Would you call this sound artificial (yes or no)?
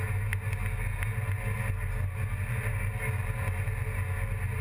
no